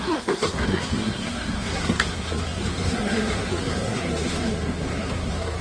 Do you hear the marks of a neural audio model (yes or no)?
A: yes